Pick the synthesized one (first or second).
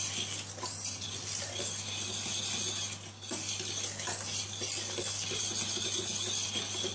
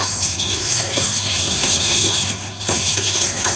second